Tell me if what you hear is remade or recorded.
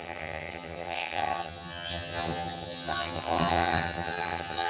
remade